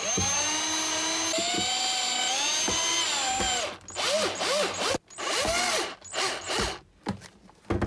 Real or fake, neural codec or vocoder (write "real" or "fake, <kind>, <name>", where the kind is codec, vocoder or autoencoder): real